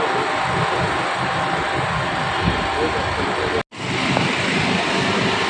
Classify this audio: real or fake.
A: real